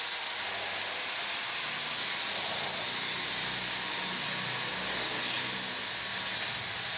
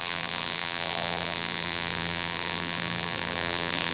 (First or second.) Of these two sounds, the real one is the first